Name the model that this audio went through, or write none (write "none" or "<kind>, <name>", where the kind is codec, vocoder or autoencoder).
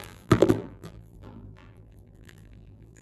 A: vocoder, BigVGAN v2